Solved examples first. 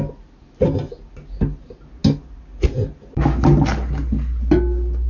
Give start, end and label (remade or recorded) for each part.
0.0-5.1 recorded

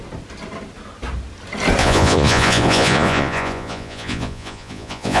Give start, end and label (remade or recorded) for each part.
0.0-1.8 recorded; 1.8-5.2 remade

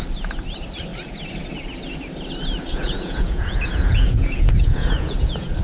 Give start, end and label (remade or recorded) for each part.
0.0-2.7 recorded; 2.7-5.6 remade

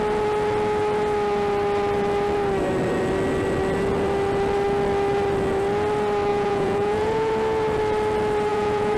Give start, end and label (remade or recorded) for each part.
0.0-6.3 recorded; 6.3-7.3 remade; 7.3-8.5 recorded; 8.5-9.0 remade

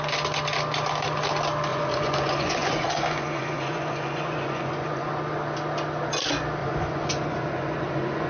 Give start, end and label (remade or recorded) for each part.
0.0-1.7 recorded; 1.7-5.1 remade; 5.1-6.6 recorded; 6.6-8.3 remade